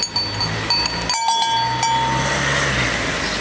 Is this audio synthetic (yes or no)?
no